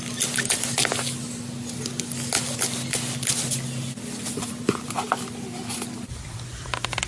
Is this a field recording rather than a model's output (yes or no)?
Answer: yes